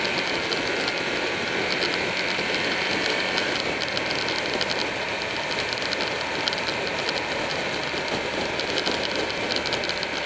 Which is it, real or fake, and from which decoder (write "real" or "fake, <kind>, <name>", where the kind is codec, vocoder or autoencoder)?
real